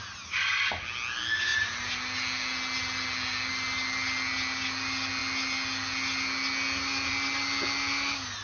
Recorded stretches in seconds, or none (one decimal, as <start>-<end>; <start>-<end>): 0.0-8.4